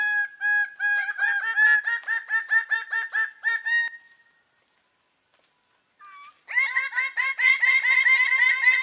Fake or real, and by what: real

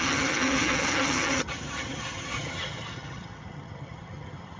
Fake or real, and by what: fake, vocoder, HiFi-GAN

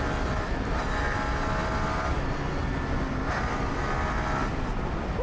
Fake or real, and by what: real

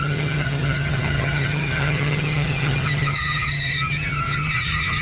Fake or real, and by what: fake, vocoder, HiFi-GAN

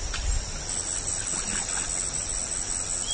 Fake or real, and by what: real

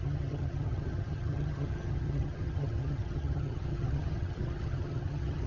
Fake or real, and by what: fake, vocoder, HiFi-GAN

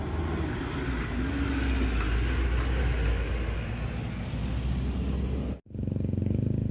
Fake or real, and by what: real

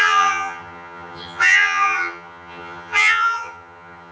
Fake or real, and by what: fake, vocoder, HiFi-GAN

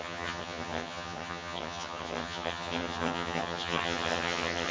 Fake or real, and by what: fake, vocoder, HiFi-GAN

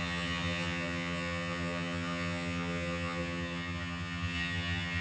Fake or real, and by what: fake, vocoder, HiFi-GAN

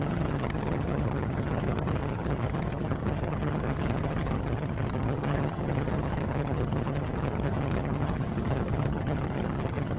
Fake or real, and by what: fake, vocoder, HiFi-GAN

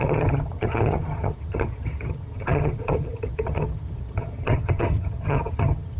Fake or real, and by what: fake, vocoder, HiFi-GAN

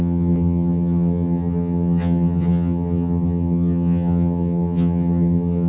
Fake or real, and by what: fake, vocoder, HiFi-GAN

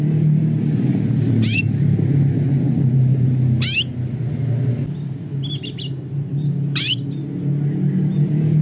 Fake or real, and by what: real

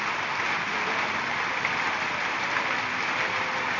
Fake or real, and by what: real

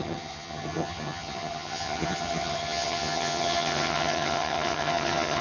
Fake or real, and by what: fake, vocoder, HiFi-GAN